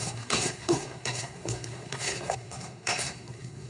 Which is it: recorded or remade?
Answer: remade